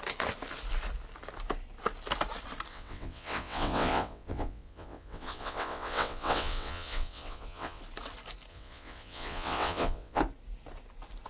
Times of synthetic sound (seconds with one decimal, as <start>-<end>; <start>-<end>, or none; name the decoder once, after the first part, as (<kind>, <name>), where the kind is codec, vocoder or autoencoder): 2.7-7.8 (vocoder, WaveNeXt); 8.5-10.2

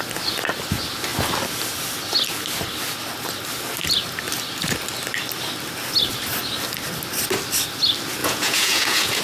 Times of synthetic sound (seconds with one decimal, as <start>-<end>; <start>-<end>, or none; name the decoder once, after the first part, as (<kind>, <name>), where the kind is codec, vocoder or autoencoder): 8.2-9.2 (vocoder, Vocos)

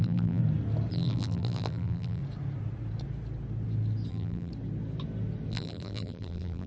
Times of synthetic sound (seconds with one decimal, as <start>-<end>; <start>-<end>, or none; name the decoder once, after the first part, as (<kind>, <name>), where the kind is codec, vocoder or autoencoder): 0.0-0.4 (vocoder, BigVGAN v2); 0.9-2.2; 4.1-4.5; 5.5-6.7

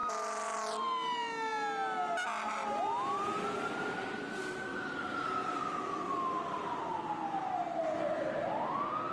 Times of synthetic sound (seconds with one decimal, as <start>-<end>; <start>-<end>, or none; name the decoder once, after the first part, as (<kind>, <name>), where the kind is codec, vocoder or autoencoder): none

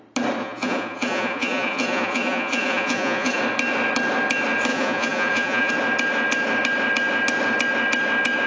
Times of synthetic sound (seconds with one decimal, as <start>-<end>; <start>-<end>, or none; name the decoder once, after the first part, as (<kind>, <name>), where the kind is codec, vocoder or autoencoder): 0.4-3.4 (vocoder, Vocos); 4.7-5.7